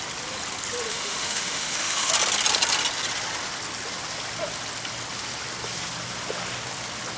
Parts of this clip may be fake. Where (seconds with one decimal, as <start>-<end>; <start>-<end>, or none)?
0.9-2.1